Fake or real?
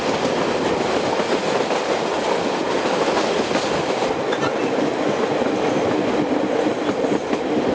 real